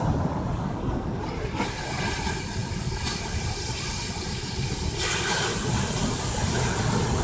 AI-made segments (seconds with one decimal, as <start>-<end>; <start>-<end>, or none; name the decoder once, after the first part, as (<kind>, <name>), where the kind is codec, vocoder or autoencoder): 0.6-1.2 (codec, SNAC)